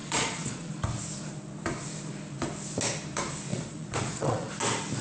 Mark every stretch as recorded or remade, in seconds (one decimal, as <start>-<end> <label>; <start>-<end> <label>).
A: 0.0-0.7 remade; 0.7-3.5 recorded; 3.5-4.5 remade; 4.5-5.0 recorded